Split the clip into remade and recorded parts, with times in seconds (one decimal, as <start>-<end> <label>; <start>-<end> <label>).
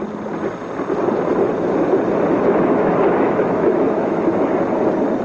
0.0-2.3 recorded; 2.3-4.2 remade; 4.2-5.2 recorded